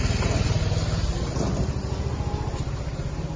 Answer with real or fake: real